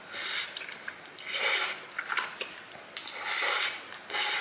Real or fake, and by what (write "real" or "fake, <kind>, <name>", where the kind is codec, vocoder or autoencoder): real